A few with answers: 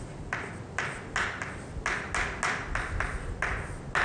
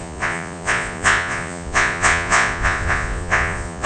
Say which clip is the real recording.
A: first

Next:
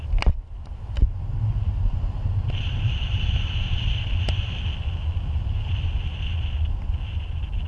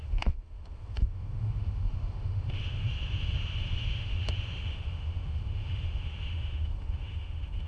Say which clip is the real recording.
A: first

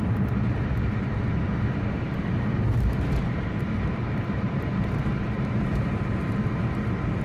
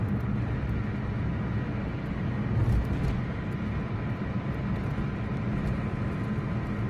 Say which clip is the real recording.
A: second